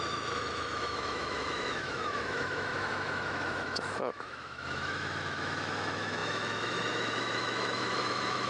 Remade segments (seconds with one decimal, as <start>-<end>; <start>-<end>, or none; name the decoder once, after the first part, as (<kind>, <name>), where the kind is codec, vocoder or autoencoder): 0.0-8.5 (autoencoder, DAC-VAE)